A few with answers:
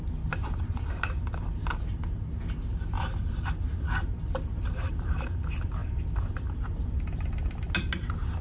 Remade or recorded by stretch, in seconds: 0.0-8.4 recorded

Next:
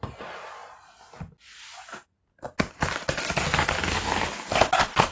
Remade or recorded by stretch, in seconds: 0.0-5.1 recorded

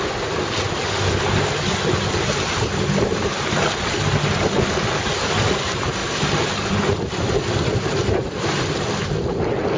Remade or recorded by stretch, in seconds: 0.0-9.8 recorded

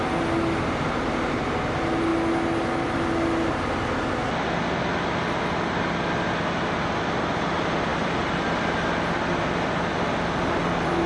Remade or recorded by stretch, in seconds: 0.0-2.1 remade; 2.1-7.0 recorded; 7.0-9.9 remade; 9.9-10.6 recorded; 10.6-11.1 remade

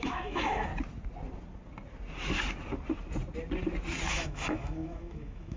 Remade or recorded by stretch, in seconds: 0.0-0.7 remade; 0.7-4.1 recorded; 4.1-5.6 remade

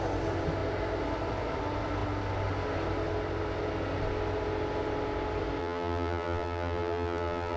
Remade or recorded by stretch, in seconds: 0.0-5.6 recorded; 5.6-7.6 remade

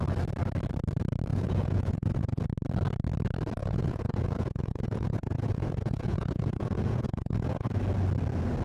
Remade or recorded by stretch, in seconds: 0.0-1.3 recorded; 1.3-2.4 remade; 2.4-3.6 recorded; 3.6-7.8 remade; 7.8-8.6 recorded

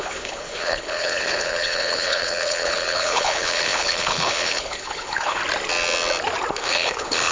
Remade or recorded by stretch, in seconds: 0.0-5.4 remade; 5.4-6.5 recorded; 6.5-7.3 remade